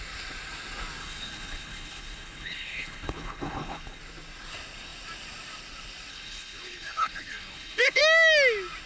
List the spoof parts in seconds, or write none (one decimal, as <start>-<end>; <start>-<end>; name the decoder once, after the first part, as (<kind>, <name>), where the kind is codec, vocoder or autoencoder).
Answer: 1.0-4.0 (codec, HILCodec); 6.1-8.0